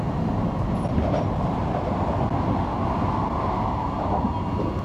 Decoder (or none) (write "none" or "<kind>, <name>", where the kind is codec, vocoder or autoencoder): none